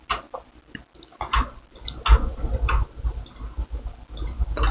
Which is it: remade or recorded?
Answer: recorded